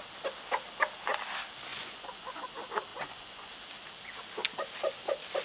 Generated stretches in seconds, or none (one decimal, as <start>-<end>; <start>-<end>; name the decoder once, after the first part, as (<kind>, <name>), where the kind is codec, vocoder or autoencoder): 1.7-2.5 (vocoder, Vocos); 2.9-3.5